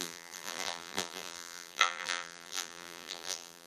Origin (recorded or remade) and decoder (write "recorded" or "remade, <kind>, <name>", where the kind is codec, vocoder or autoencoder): remade, vocoder, BigVGAN v2